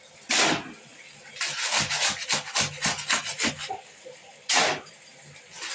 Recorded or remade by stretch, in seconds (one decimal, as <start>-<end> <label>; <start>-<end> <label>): 0.0-5.7 recorded